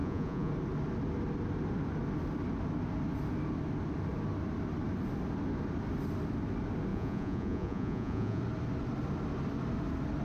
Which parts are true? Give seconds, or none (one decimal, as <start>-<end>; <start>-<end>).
0.5-6.9; 8.4-10.2